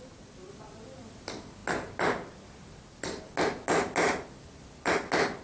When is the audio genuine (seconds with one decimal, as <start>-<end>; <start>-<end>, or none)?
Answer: 0.0-5.4